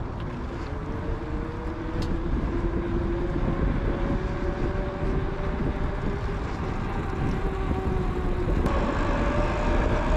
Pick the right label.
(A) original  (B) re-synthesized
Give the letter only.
A